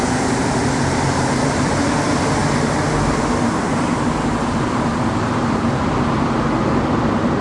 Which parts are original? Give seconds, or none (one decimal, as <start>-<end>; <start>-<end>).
2.4-2.9; 5.6-6.6